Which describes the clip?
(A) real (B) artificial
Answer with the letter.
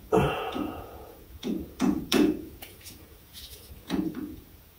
B